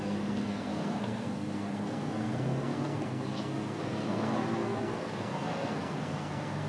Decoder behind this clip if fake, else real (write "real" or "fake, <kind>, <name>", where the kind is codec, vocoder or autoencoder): fake, codec, SNAC